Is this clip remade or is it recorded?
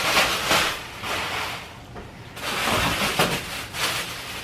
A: recorded